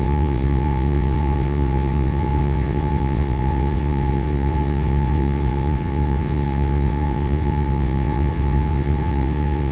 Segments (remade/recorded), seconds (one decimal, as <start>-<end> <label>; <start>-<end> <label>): 0.0-9.7 remade